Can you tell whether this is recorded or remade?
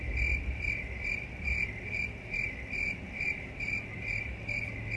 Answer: recorded